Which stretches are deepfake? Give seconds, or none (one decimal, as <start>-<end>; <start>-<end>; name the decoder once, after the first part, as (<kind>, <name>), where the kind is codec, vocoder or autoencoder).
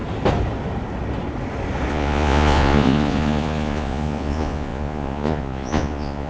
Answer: 1.9-6.3 (vocoder, Vocos)